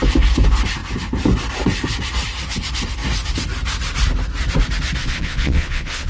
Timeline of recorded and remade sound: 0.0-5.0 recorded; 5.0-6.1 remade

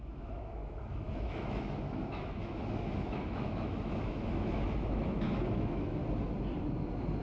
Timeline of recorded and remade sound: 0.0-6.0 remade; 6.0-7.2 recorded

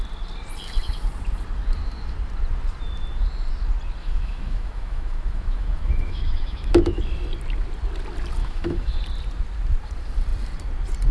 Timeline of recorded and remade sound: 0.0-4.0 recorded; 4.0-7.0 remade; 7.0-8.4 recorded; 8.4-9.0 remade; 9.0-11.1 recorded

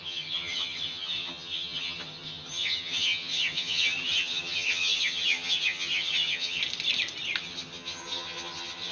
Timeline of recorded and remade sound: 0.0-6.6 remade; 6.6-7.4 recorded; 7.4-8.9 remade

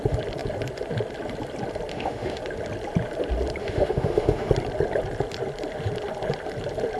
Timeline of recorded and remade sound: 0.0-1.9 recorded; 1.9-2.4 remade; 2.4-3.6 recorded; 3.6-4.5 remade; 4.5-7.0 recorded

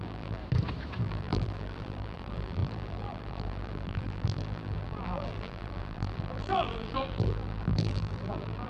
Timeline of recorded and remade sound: 0.0-0.4 remade; 0.4-1.0 recorded; 1.0-8.7 remade

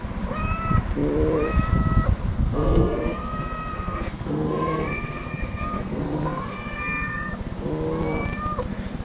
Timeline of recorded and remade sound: 0.0-2.3 recorded; 2.3-7.3 remade; 7.3-9.0 recorded